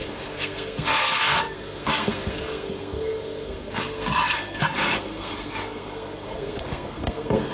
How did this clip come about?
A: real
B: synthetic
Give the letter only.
B